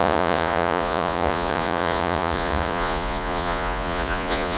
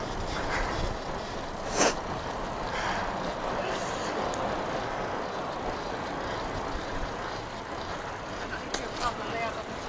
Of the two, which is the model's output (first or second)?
first